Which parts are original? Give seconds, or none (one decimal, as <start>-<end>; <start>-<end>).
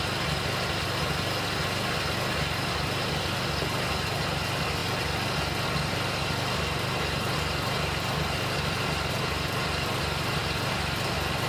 0.0-11.5